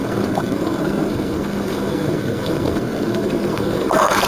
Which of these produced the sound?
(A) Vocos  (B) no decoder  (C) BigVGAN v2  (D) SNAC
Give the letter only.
D